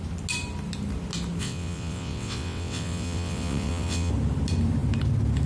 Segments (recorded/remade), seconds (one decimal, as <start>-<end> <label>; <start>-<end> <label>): 0.0-1.4 recorded; 1.4-4.1 remade; 4.1-5.5 recorded